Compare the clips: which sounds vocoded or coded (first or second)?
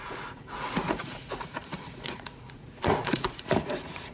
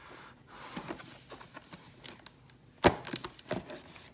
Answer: first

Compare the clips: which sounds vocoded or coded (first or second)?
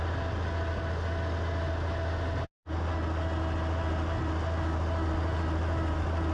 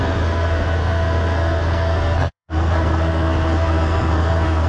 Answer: second